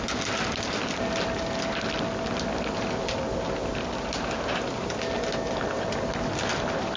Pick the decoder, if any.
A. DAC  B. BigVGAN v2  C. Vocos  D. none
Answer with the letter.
D